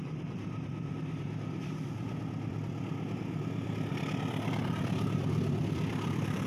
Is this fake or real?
fake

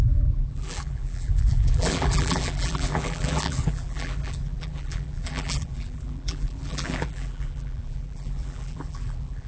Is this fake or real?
fake